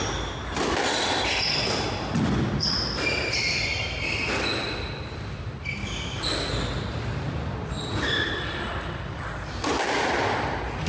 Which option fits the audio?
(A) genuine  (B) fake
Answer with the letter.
A